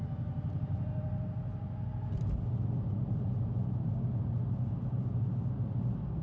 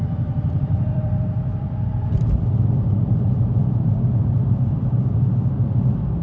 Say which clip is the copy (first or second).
second